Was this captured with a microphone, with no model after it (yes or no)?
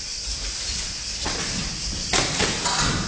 yes